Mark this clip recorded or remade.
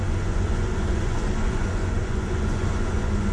remade